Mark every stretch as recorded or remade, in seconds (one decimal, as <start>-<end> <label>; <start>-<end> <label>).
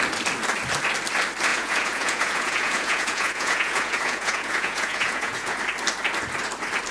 0.0-1.5 recorded; 1.5-5.6 remade; 5.6-6.9 recorded